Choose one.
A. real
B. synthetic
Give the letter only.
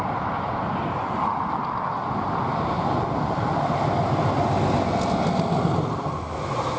A